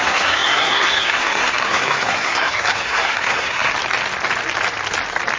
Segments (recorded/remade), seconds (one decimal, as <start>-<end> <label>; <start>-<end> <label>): 0.0-3.7 remade; 3.7-5.4 recorded